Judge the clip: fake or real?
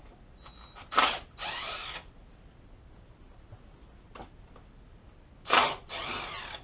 real